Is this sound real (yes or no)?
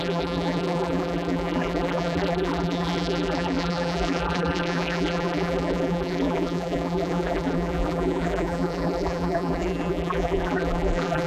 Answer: no